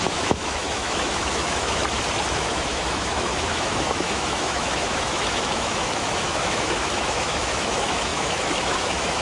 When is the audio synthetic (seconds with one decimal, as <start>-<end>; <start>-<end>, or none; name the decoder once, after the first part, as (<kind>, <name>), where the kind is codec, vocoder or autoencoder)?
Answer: 0.0-1.8 (autoencoder, DAC-VAE); 2.3-9.2